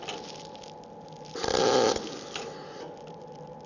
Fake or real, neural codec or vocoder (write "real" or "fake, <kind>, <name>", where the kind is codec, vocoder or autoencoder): real